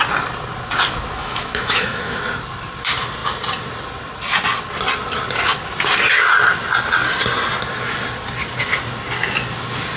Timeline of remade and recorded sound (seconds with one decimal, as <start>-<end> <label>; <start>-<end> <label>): 0.0-1.2 recorded; 1.2-2.2 remade; 2.2-10.0 recorded